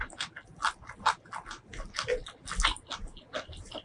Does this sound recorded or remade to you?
recorded